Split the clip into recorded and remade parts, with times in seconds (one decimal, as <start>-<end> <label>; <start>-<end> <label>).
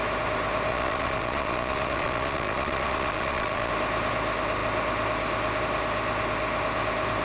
0.0-0.7 recorded; 0.7-3.7 remade; 3.7-7.2 recorded